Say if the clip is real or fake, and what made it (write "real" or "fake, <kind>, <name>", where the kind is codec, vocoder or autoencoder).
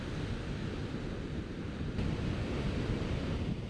real